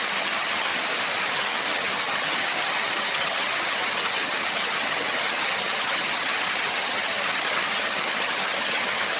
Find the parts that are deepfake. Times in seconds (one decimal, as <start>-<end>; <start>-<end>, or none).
0.0-0.7; 1.2-9.2

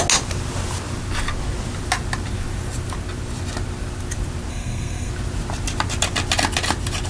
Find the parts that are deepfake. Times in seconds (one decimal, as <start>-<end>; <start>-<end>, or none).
4.5-5.1

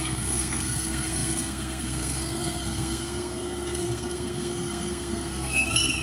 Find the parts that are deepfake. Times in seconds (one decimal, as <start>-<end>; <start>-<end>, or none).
0.0-6.0